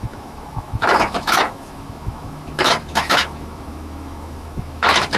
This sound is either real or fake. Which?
fake